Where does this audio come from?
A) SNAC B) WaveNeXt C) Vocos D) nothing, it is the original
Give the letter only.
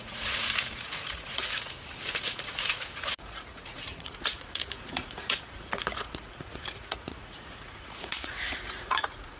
C